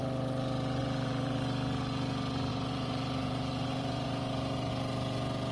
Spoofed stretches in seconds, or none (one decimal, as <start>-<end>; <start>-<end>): 0.8-1.4; 2.5-4.7

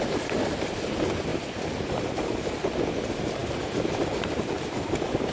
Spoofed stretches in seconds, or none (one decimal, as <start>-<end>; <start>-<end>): 1.3-2.5

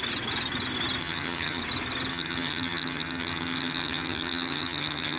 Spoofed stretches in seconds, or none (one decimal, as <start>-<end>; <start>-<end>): 1.0-1.6; 2.1-5.2

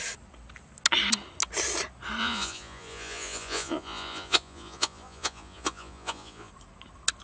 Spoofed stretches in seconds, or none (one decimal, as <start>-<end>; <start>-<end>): 2.2-6.5

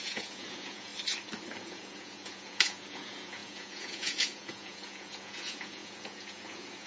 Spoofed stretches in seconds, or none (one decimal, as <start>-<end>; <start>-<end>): 0.0-0.9; 1.6-6.9